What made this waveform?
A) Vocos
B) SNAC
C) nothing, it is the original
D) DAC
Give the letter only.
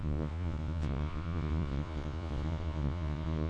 A